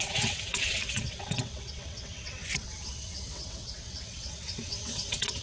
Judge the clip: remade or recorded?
remade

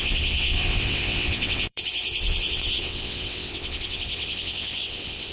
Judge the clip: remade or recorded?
remade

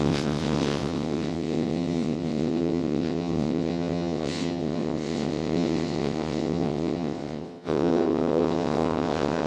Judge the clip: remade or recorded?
remade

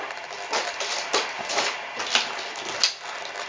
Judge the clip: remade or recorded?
recorded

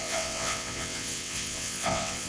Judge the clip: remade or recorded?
remade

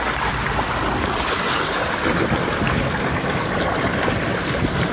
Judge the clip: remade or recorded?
recorded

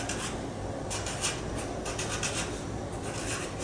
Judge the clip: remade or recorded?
recorded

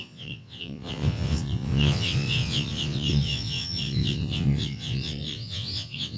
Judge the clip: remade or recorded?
remade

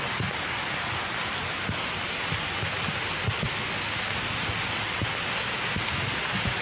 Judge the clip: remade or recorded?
recorded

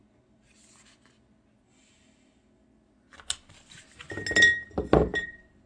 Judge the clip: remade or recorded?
recorded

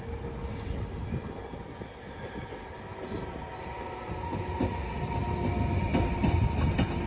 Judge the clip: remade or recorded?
recorded